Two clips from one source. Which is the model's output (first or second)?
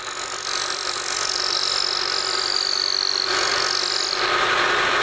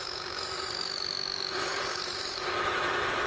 second